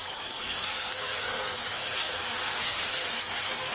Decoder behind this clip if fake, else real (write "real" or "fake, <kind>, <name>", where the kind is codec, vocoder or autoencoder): fake, codec, SNAC